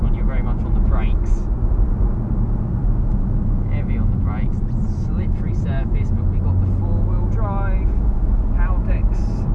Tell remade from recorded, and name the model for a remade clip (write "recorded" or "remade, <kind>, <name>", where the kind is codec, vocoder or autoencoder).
recorded